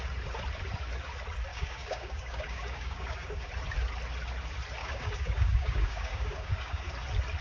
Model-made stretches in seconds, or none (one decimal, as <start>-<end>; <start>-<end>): 1.5-3.5; 4.8-6.9